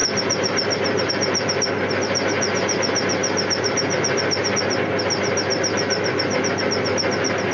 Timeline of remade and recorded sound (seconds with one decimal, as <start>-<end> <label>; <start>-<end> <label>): 0.0-7.5 recorded